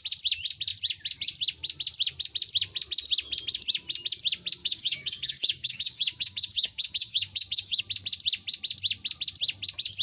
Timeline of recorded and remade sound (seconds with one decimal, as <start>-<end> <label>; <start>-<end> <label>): 0.0-4.6 recorded; 4.6-7.8 remade; 7.8-10.0 recorded